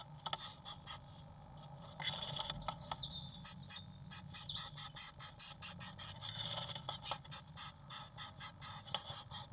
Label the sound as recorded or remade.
recorded